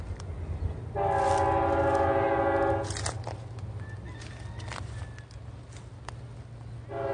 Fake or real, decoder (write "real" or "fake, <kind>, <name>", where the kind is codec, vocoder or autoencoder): real